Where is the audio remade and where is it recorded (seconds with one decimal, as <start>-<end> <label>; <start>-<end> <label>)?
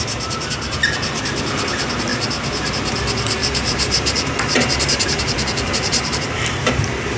0.0-2.1 recorded; 2.1-2.7 remade; 2.7-3.4 recorded; 3.4-6.7 remade; 6.7-7.2 recorded